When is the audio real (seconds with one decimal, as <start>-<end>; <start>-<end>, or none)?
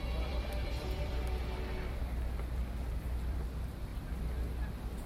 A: 1.4-3.2; 3.9-5.1